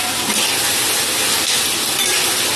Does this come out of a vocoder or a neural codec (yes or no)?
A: no